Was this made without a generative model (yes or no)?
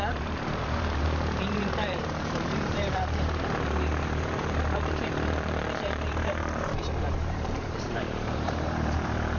no